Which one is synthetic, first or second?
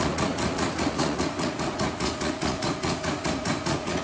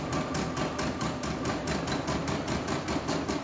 first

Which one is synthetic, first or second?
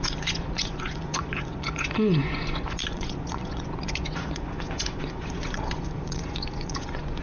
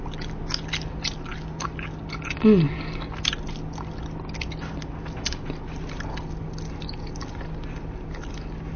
first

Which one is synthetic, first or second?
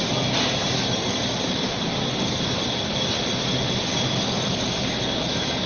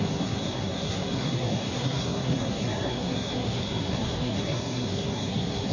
second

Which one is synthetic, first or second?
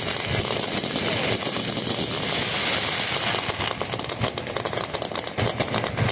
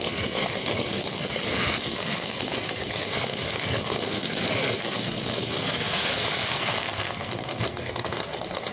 second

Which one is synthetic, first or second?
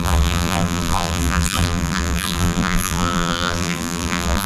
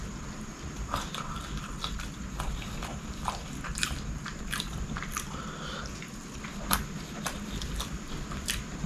first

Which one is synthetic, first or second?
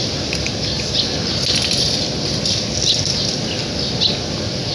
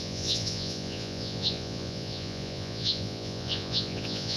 second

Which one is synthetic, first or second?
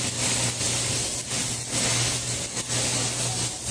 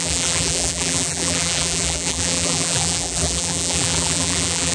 second